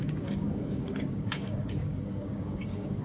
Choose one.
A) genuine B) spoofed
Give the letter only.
B